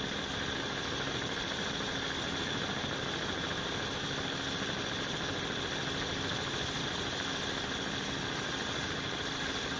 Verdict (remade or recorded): recorded